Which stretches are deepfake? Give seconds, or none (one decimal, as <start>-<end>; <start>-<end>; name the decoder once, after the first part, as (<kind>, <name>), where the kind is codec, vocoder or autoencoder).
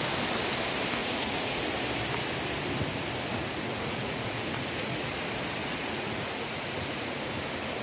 1.0-1.6 (vocoder, Vocos); 3.4-5.1; 5.6-7.3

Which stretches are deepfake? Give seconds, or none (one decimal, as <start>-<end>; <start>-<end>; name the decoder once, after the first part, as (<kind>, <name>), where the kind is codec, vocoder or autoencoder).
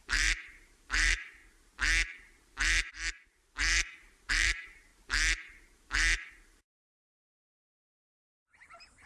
0.0-1.4 (vocoder, BigVGAN v2); 4.3-4.9; 6.3-9.1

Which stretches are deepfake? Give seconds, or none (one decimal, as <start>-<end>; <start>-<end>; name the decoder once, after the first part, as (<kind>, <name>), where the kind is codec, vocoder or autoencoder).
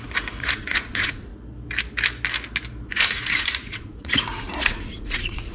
0.0-1.3 (vocoder, Vocos); 2.9-5.5